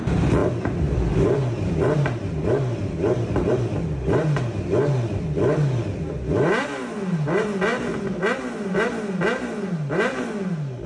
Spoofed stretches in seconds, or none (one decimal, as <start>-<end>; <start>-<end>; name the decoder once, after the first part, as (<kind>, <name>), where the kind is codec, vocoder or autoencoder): none